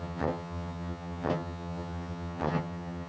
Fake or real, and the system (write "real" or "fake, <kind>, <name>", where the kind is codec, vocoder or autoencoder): fake, vocoder, HiFi-GAN